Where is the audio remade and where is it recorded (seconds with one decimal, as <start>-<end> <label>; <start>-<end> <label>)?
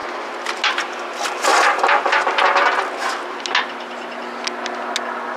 0.0-5.4 recorded